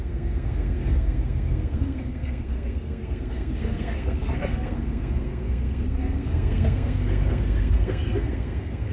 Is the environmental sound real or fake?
fake